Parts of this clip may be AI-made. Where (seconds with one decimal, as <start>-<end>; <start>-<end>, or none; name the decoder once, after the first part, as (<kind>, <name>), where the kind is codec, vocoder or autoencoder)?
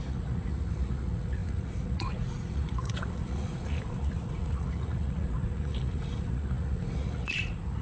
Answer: 0.0-7.8 (vocoder, Vocos)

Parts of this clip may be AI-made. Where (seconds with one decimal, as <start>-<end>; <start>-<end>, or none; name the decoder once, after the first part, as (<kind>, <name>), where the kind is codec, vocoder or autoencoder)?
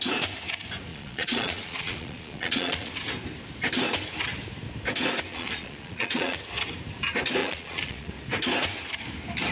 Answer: 0.9-2.9 (vocoder, Vocos); 5.3-6.4; 7.4-8.1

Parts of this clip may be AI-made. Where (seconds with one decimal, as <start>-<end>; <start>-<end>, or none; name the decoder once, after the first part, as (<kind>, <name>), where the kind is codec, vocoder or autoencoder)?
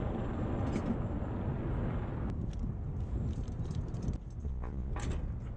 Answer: 4.4-4.9 (vocoder, Vocos)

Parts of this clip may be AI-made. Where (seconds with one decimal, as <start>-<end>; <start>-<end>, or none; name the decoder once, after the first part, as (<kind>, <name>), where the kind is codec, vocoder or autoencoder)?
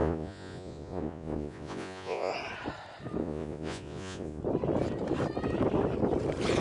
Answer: 0.0-2.3 (vocoder, Vocos); 3.2-4.4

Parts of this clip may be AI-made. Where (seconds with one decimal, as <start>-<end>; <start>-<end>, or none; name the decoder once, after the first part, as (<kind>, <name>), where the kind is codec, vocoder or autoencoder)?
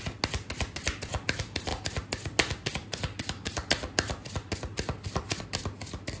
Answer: none